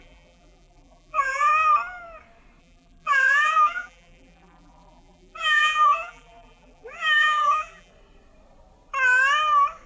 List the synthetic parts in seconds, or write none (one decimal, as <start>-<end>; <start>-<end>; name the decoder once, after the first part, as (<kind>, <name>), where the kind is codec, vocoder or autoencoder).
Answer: 0.0-1.5 (vocoder, BigVGAN v2); 2.6-7.9